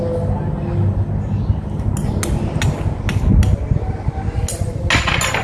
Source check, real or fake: real